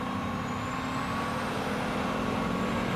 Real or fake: real